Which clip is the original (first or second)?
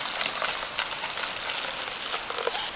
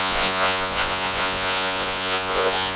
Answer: first